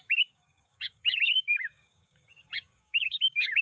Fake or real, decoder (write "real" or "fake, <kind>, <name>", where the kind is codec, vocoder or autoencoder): fake, codec, DAC